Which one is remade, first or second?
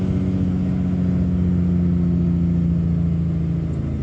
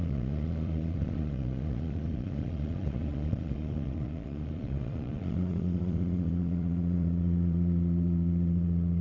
second